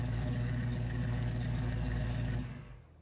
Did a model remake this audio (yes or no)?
yes